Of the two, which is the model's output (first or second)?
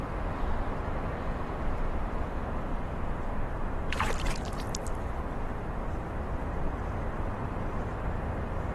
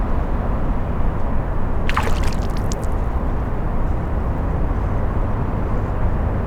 first